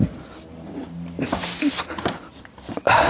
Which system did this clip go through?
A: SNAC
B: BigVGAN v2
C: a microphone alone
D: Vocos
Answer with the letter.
C